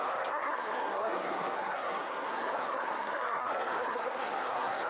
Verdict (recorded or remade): remade